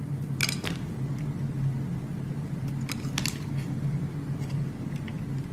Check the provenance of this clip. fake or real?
real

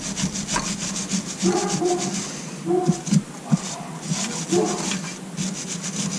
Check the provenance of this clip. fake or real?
real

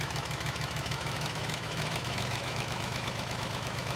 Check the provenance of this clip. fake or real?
fake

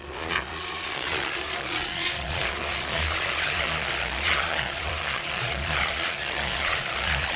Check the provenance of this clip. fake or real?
fake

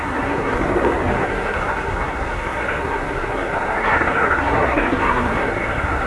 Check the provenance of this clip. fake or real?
fake